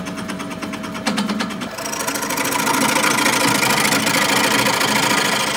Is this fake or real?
real